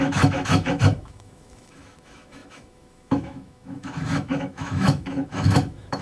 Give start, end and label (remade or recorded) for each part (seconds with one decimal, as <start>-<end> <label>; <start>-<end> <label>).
0.0-6.0 remade

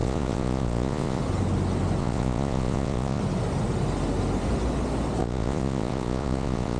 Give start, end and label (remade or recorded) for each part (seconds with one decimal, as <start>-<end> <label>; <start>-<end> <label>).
0.0-1.2 remade; 1.2-2.0 recorded; 2.0-3.2 remade; 3.2-5.2 recorded; 5.2-6.8 remade

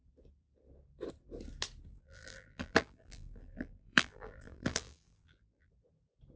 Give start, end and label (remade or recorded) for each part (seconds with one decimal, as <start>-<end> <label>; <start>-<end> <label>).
0.0-1.9 recorded; 1.9-5.7 remade; 5.7-6.4 recorded

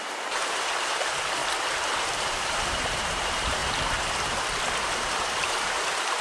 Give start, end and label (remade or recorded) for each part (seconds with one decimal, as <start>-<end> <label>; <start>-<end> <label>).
0.0-1.4 remade; 1.4-2.0 recorded; 2.0-3.6 remade; 3.6-4.8 recorded; 4.8-6.2 remade